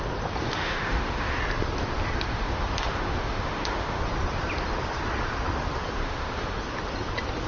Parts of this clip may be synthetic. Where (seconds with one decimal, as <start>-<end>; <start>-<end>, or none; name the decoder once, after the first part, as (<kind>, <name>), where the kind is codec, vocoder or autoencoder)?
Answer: 0.6-1.4 (autoencoder, DAC-VAE); 2.3-4.0; 6.0-6.6